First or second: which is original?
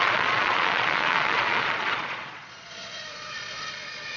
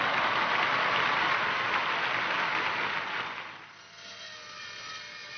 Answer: second